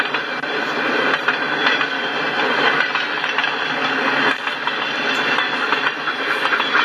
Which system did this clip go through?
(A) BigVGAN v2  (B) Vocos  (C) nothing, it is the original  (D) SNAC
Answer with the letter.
C